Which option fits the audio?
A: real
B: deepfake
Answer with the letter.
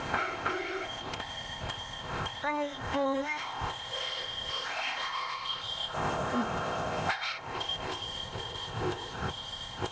B